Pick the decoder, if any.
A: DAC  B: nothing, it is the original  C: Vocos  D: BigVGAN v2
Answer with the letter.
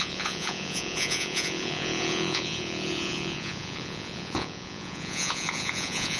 C